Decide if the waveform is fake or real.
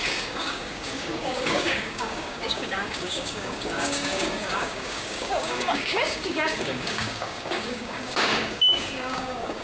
fake